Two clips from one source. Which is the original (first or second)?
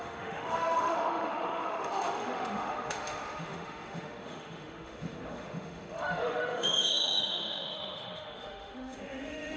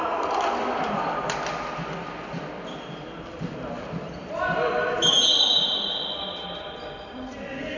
second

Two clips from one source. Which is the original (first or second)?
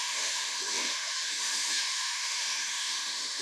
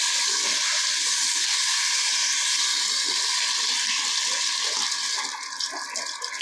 second